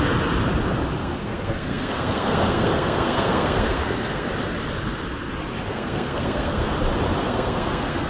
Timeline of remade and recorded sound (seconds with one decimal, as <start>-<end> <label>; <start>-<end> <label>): 0.0-1.0 recorded; 1.0-4.3 remade; 4.3-5.7 recorded; 5.7-6.7 remade; 6.7-7.2 recorded; 7.2-8.1 remade